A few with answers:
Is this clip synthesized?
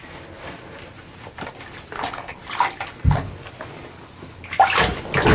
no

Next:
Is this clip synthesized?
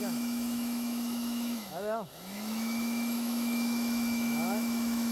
yes